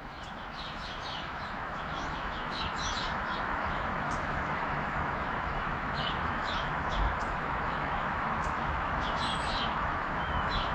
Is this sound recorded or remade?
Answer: remade